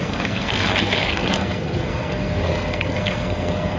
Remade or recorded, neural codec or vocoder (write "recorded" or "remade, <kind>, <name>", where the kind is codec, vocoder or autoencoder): remade, codec, SNAC